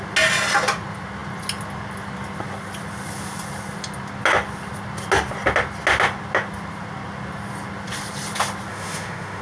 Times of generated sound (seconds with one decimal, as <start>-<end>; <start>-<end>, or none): 8.7-9.4

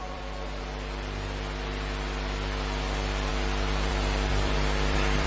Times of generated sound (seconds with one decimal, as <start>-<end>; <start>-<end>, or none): 0.0-0.6; 4.3-5.3

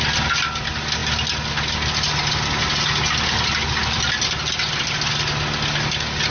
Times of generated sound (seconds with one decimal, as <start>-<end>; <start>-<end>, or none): none

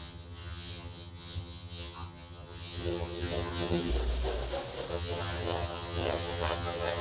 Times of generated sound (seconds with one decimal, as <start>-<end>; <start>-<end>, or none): 0.0-3.9; 4.9-7.0

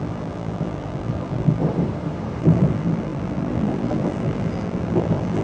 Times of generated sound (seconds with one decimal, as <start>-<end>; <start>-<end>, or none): 0.0-1.6; 2.4-5.4

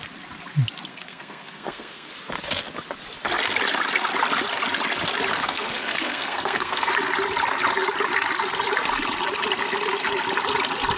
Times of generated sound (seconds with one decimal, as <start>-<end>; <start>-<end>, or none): 0.9-2.1; 5.3-6.9